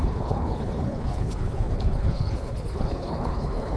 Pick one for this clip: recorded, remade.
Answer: remade